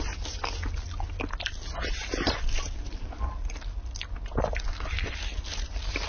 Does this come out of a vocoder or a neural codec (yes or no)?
no